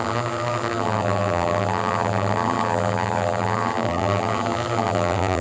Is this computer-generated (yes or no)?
yes